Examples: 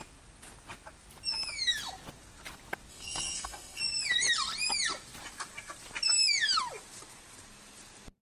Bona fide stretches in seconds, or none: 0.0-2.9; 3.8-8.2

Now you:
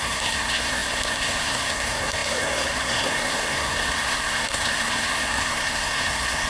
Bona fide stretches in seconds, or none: none